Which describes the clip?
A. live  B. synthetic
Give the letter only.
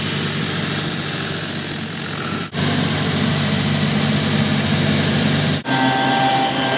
A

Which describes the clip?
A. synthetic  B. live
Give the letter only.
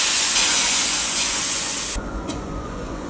A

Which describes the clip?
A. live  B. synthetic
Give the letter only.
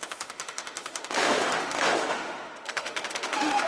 B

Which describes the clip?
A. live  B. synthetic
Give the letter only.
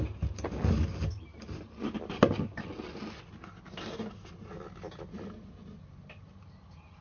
A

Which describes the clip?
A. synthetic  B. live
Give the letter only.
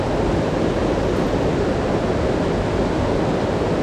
B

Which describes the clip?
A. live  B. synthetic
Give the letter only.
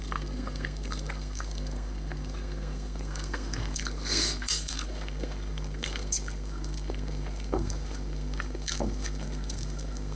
B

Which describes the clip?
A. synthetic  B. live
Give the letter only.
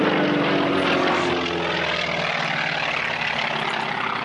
B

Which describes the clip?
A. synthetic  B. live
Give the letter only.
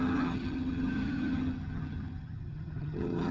A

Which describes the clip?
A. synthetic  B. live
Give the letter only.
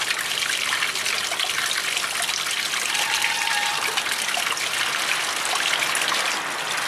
B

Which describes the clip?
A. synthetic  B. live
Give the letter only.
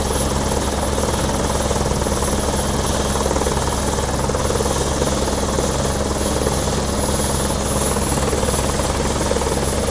B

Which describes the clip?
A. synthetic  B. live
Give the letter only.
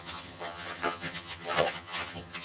A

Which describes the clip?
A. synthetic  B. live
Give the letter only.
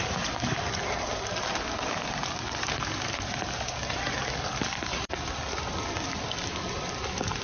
B